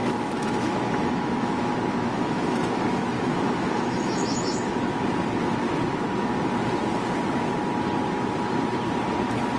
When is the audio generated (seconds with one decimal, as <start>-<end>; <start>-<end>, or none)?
0.0-4.8